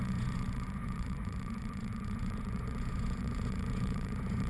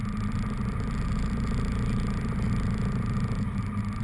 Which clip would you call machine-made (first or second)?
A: first